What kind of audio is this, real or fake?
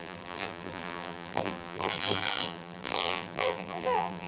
fake